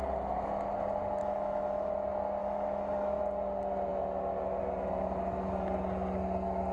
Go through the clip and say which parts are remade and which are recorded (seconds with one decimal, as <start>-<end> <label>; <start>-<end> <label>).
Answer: 0.0-1.2 recorded; 1.2-1.9 remade; 1.9-2.4 recorded; 2.4-3.2 remade; 3.2-6.7 recorded